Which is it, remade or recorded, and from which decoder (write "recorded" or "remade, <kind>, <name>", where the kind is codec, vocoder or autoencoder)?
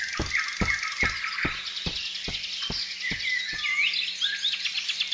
recorded